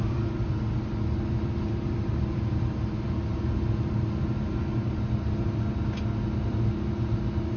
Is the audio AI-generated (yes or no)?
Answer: no